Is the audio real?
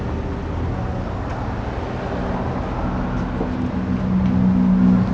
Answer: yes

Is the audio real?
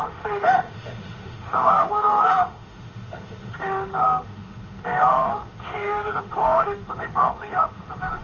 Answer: no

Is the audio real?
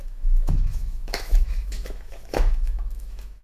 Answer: no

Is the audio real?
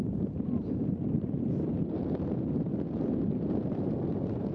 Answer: yes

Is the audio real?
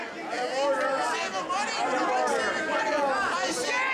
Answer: yes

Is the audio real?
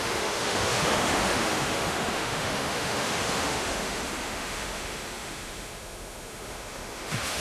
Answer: no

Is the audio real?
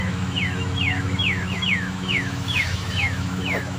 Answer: no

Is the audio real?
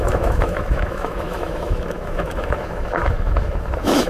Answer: no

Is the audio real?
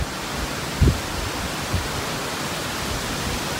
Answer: yes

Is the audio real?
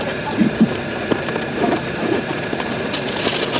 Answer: yes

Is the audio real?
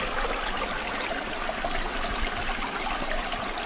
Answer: yes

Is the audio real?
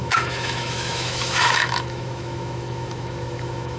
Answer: no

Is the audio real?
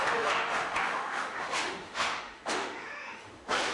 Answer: no